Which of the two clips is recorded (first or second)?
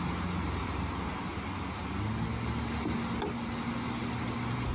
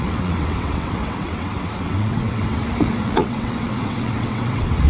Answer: first